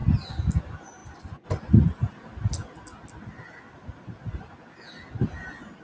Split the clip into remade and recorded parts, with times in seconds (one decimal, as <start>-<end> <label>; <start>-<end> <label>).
0.0-5.8 recorded